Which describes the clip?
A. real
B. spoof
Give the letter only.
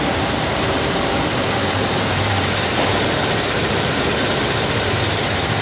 B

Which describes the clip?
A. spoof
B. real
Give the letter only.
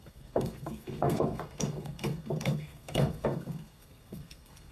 A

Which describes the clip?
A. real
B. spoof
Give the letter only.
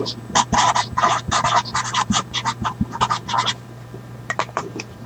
B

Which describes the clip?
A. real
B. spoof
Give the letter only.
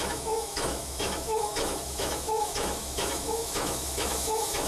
B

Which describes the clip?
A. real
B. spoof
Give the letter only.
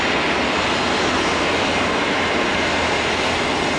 A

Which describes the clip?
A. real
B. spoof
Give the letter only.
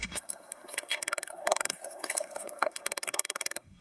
B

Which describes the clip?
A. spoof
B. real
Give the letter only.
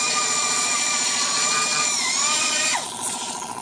A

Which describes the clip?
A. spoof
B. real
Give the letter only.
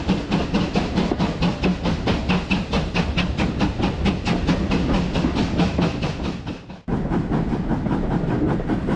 B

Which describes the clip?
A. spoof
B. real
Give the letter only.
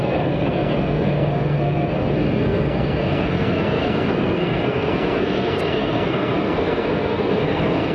A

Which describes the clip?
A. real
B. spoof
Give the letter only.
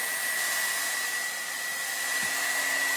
A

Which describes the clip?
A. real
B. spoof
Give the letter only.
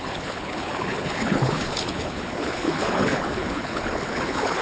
B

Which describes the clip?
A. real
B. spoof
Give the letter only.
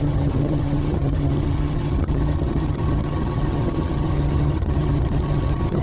B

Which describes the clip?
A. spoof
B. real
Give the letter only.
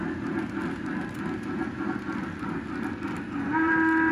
B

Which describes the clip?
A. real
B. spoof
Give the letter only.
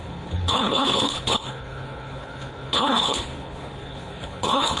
B